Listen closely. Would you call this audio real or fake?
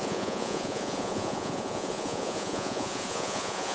fake